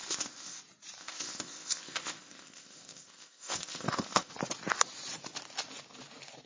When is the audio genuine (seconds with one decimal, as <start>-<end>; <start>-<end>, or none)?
0.6-1.0; 4.3-6.5